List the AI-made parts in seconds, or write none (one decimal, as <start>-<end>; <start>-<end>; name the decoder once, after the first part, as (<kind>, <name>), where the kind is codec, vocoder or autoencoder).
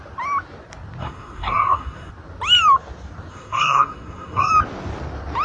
1.0-2.1 (codec, SNAC); 3.3-4.5